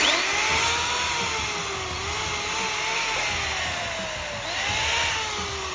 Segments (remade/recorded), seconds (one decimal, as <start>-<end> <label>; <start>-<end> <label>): 0.0-5.7 recorded